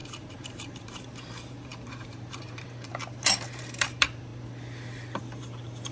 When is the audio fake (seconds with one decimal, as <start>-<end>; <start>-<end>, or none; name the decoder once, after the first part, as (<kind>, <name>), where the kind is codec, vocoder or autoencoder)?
0.0-4.3 (vocoder, BigVGAN v2); 5.2-5.9